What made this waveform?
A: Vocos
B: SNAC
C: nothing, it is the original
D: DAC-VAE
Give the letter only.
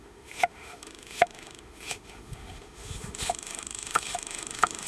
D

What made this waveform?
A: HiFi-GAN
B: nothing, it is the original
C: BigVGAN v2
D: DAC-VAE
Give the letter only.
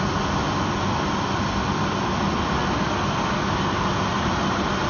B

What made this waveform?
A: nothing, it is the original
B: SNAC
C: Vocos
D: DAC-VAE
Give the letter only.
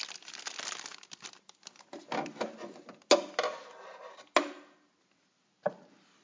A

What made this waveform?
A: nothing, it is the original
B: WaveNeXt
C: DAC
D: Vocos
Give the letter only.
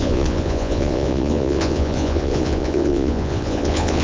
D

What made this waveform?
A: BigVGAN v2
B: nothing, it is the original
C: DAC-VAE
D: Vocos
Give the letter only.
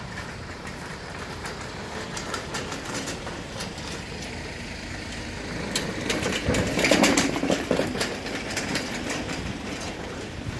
A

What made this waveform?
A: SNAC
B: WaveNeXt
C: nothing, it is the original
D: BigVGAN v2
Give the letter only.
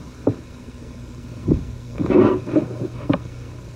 A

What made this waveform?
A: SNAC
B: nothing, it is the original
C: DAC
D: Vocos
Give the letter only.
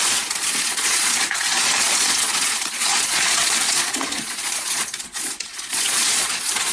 D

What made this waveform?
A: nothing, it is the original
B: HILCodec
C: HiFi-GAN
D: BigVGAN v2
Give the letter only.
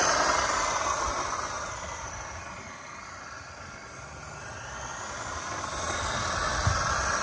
A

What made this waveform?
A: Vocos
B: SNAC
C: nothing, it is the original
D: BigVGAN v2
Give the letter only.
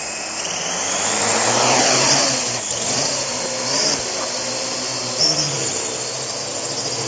C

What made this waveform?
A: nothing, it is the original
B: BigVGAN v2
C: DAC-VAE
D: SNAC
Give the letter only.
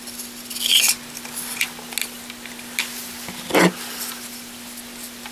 A